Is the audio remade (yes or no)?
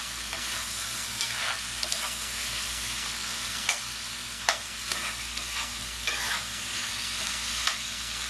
yes